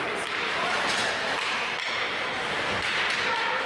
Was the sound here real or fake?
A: fake